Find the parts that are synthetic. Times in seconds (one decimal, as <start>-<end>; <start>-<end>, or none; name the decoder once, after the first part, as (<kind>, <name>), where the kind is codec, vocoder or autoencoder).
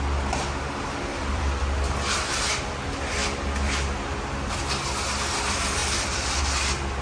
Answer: 1.1-1.6 (vocoder, BigVGAN v2); 5.8-6.4